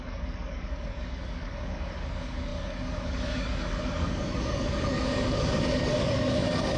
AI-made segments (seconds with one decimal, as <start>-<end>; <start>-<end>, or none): 0.0-6.8